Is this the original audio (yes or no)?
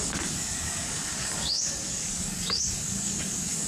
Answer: no